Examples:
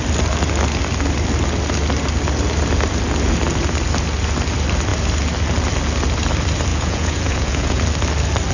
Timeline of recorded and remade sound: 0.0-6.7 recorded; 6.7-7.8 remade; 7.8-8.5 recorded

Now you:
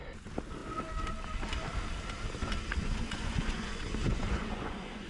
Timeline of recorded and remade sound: 0.0-2.8 recorded; 2.8-5.1 remade

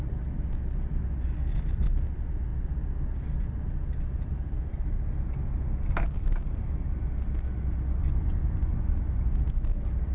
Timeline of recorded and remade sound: 0.0-8.0 recorded; 8.0-9.0 remade; 9.0-10.1 recorded

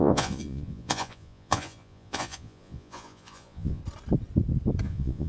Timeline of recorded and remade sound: 0.0-3.8 remade; 3.8-4.8 recorded; 4.8-5.3 remade

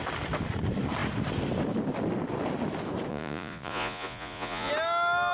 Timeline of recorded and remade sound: 0.0-3.1 recorded; 3.1-4.7 remade; 4.7-5.3 recorded

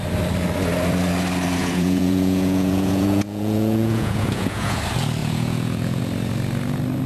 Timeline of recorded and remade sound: 0.0-1.6 recorded; 1.6-4.8 remade; 4.8-5.2 recorded; 5.2-6.0 remade; 6.0-7.1 recorded